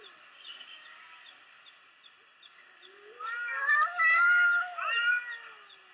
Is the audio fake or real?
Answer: real